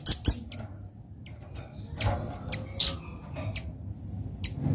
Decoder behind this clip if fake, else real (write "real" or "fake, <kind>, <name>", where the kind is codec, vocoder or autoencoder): real